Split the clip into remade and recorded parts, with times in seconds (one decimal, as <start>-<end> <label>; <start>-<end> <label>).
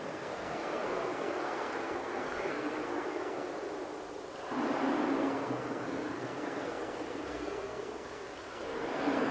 0.0-3.5 remade; 3.5-5.2 recorded; 5.2-9.3 remade